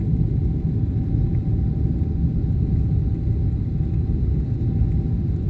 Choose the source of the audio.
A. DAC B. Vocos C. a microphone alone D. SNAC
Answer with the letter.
C